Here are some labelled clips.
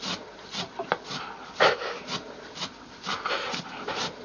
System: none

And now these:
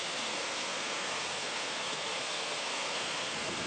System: codec, SNAC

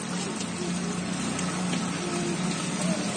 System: none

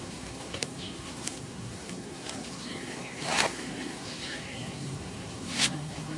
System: codec, SNAC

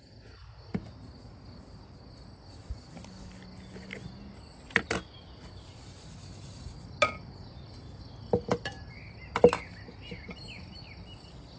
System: none